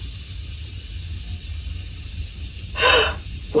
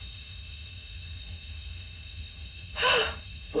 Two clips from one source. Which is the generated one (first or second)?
second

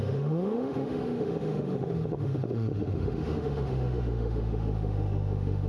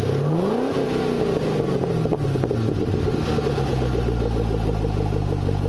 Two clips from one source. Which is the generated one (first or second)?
first